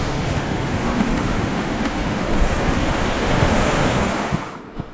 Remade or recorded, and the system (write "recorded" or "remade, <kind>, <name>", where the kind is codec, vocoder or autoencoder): remade, autoencoder, DAC-VAE